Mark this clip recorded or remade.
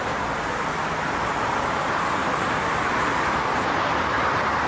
remade